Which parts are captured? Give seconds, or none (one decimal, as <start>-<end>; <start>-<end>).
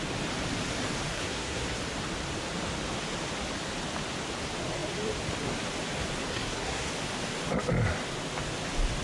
0.0-1.1; 1.8-6.3; 6.9-9.0